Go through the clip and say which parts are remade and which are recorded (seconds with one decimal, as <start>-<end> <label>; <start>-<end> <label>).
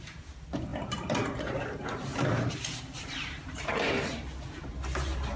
0.0-2.1 remade; 2.1-3.1 recorded; 3.1-4.1 remade; 4.1-4.7 recorded; 4.7-5.4 remade